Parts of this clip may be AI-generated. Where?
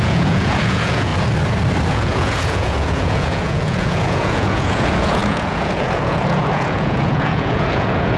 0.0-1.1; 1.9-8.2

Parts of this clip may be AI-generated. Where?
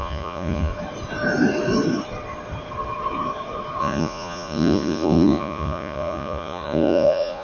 0.0-0.7; 3.8-7.4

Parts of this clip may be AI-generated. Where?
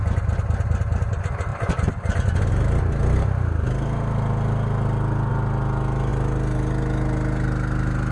none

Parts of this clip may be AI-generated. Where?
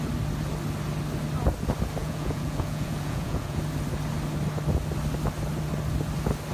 2.0-3.6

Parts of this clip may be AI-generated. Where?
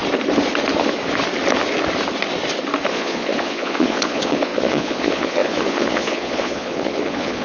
2.9-7.4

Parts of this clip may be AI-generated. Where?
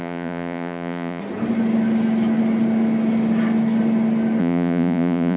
0.0-1.2; 4.4-5.4